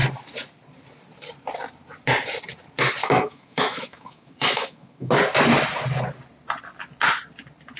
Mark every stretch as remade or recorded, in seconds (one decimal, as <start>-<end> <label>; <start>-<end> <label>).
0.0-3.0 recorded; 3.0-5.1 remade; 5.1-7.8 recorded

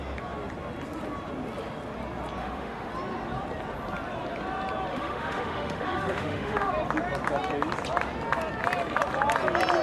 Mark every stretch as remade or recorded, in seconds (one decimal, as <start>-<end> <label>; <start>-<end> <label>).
0.0-2.4 recorded; 2.4-2.9 remade; 2.9-4.9 recorded; 4.9-6.7 remade; 6.7-9.8 recorded

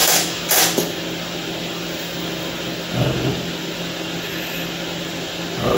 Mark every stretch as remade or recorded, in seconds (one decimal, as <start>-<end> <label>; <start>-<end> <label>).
0.0-0.5 remade; 0.5-5.8 recorded